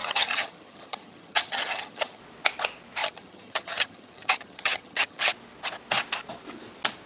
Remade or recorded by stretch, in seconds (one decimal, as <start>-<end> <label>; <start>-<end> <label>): 0.0-2.2 remade; 2.2-3.0 recorded; 3.0-5.2 remade; 5.2-7.0 recorded